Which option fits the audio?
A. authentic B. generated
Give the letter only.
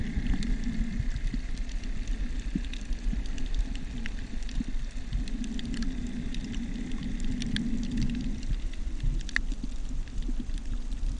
A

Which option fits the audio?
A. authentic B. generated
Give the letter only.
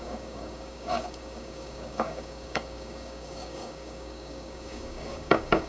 B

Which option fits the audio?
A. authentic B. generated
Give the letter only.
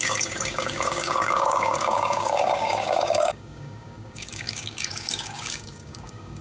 B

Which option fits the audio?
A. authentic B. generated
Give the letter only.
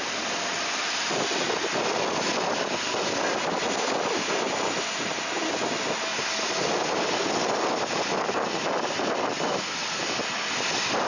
A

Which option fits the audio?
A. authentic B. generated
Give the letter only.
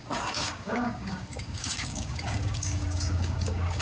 B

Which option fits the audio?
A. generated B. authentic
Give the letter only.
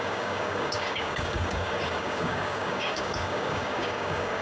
A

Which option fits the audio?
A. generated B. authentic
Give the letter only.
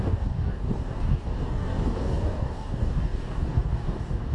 A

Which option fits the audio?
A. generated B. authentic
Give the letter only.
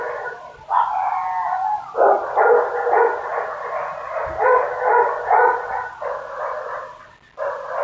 B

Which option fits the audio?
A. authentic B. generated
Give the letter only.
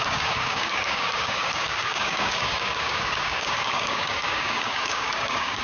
B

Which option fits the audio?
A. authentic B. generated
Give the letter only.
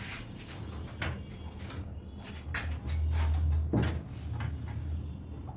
A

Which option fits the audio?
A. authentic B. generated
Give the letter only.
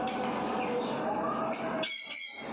A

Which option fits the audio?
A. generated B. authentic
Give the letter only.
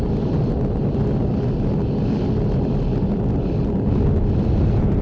B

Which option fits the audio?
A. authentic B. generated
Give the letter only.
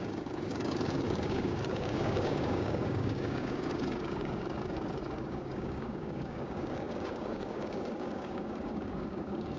B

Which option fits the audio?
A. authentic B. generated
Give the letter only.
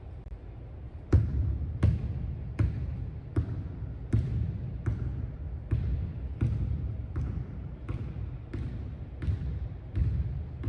A